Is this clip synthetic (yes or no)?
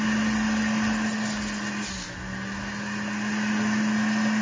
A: no